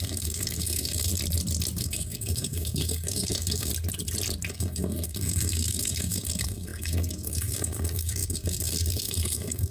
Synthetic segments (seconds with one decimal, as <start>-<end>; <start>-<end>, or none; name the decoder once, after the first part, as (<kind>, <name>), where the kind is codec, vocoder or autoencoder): 0.0-1.1 (codec, SNAC); 1.8-3.7; 4.5-9.7